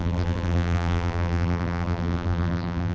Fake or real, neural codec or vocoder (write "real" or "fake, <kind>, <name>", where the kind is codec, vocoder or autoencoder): fake, vocoder, BigVGAN v2